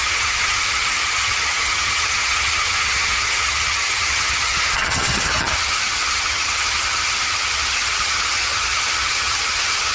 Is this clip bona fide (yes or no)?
no